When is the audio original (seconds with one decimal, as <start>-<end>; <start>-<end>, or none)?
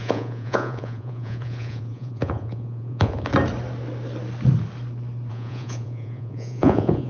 3.3-5.3